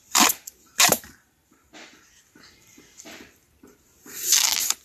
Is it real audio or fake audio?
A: fake